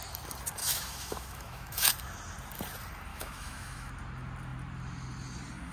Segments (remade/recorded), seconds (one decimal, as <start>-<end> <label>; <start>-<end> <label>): 0.0-0.6 recorded; 0.6-1.9 remade; 1.9-3.1 recorded; 3.1-3.9 remade; 3.9-5.7 recorded